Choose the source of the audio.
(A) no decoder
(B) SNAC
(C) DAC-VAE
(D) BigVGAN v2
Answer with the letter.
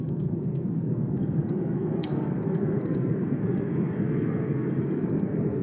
B